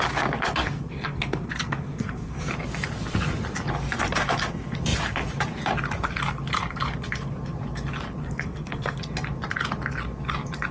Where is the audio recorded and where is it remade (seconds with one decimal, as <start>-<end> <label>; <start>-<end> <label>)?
0.0-0.6 recorded; 0.6-2.5 remade; 2.5-8.2 recorded; 8.2-9.0 remade; 9.0-10.7 recorded